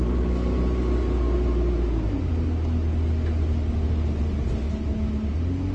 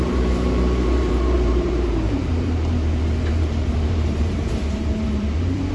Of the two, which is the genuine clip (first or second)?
first